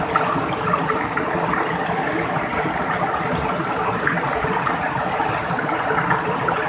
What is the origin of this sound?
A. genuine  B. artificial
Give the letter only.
A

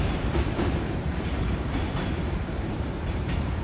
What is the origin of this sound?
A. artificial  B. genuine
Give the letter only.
A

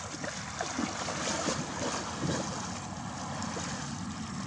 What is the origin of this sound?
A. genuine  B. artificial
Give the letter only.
A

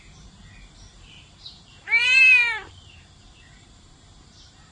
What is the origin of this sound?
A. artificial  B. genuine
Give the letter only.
A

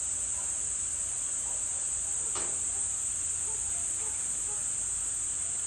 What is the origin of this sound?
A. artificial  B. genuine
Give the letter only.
B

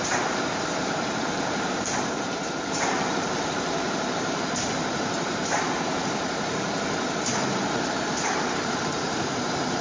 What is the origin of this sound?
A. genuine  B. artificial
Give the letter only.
B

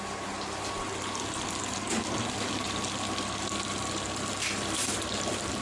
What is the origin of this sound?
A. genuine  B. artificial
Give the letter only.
A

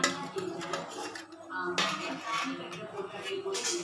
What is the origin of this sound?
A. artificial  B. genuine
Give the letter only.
B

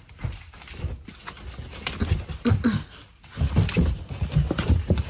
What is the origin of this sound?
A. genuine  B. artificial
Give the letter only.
A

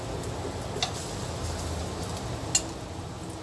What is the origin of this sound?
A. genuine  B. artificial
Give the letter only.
A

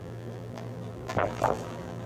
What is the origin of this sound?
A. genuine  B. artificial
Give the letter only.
B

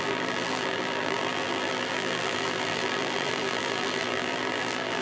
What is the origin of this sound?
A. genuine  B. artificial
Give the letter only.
B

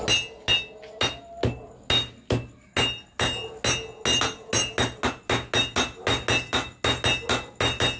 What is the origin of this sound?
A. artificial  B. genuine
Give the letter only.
B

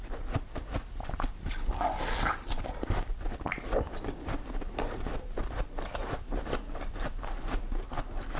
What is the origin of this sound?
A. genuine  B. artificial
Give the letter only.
B